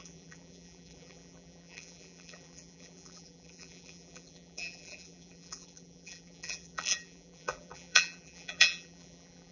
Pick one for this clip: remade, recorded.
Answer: remade